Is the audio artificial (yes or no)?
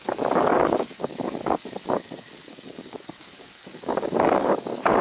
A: yes